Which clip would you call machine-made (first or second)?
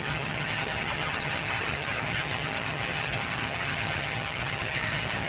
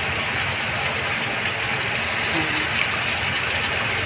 first